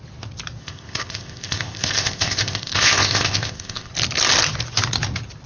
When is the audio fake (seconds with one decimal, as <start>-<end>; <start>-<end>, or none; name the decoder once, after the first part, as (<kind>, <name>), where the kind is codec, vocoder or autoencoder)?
0.6-3.9 (codec, ZipCodec)